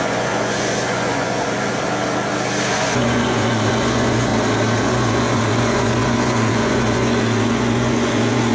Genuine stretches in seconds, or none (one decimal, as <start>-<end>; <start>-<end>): 1.7-2.7; 4.3-4.8